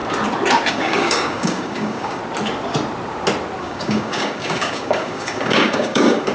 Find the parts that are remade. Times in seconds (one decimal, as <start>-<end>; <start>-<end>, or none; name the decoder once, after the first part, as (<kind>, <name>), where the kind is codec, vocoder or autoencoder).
0.7-2.2 (codec, DAC); 3.6-6.3